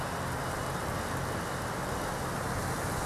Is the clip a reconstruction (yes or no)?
no